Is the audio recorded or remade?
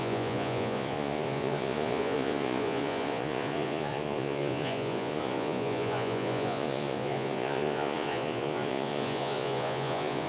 remade